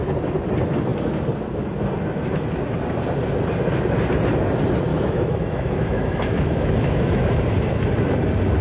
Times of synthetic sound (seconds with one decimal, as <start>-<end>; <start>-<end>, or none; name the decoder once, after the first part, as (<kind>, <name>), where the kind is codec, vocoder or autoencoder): 4.9-7.4 (autoencoder, DAC-VAE)